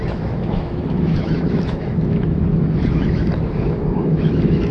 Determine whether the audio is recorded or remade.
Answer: remade